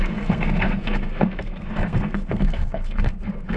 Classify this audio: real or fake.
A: fake